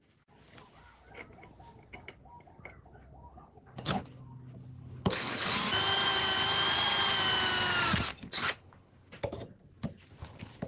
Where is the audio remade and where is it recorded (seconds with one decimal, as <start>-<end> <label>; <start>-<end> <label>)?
0.0-3.3 recorded; 3.3-4.0 remade; 4.0-4.7 recorded; 4.7-5.5 remade; 5.5-8.1 recorded; 8.1-8.9 remade; 8.9-10.7 recorded